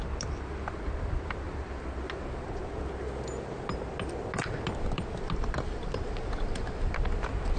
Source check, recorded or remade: recorded